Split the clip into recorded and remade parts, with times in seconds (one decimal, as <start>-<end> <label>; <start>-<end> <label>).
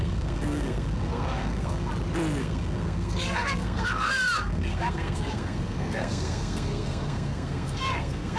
0.0-1.9 remade; 1.9-2.4 recorded; 2.4-8.4 remade